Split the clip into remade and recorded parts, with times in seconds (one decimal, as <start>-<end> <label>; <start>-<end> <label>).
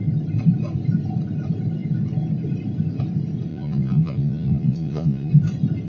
0.0-3.5 recorded; 3.5-5.3 remade; 5.3-5.9 recorded